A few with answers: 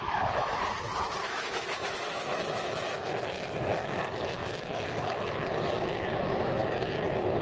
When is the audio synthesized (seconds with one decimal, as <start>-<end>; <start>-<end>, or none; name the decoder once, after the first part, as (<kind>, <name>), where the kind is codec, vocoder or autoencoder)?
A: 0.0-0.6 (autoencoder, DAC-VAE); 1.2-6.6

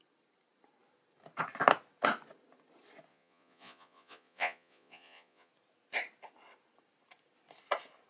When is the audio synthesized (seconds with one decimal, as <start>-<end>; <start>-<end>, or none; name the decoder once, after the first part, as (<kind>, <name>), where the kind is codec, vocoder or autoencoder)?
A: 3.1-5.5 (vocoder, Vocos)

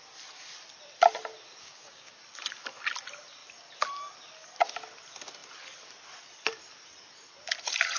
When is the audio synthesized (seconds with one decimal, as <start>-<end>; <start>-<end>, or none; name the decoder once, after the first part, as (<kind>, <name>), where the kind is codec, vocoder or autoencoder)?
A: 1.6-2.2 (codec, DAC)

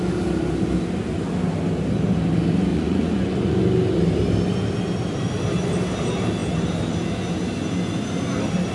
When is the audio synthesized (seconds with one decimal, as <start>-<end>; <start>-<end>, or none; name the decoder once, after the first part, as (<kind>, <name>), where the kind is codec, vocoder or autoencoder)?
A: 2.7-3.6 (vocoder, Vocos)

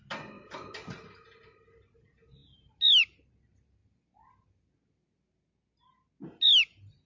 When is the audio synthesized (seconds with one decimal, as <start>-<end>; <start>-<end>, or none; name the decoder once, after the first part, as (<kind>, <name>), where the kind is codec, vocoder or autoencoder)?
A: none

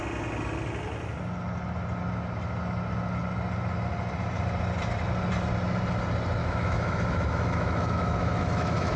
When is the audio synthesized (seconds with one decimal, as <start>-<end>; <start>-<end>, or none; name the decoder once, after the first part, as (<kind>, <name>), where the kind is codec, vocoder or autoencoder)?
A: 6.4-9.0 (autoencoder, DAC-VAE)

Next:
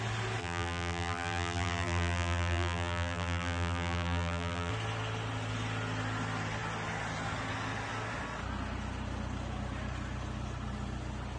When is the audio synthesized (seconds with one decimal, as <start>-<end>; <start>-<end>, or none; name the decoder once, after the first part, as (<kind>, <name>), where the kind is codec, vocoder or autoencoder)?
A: 0.4-4.7 (vocoder, BigVGAN v2)